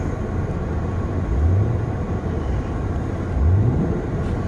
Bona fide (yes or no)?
yes